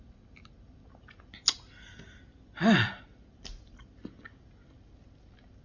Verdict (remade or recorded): recorded